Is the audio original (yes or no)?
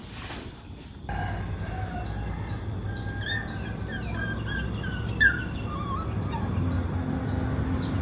yes